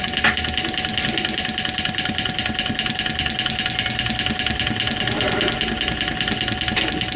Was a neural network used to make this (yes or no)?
no